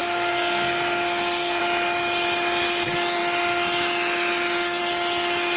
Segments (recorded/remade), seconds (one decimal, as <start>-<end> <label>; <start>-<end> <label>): 0.0-1.6 remade; 1.6-5.6 recorded